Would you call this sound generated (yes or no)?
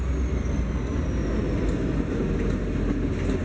no